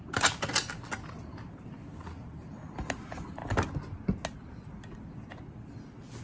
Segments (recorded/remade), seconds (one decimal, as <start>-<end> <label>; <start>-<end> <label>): 0.0-6.2 recorded

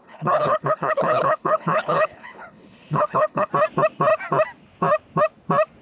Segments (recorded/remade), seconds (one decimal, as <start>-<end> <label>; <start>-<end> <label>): 0.0-3.5 remade; 3.5-5.8 recorded

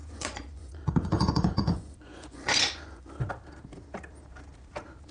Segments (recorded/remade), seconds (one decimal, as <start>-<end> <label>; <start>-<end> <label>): 0.0-3.1 remade; 3.1-5.1 recorded

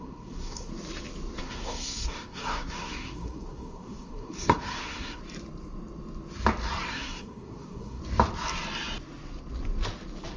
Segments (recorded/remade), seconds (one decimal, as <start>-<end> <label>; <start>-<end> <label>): 0.0-0.7 remade; 0.7-1.4 recorded; 1.4-5.2 remade; 5.2-6.9 recorded; 6.9-8.0 remade; 8.0-10.4 recorded